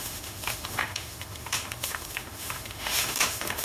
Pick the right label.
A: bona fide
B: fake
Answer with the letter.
B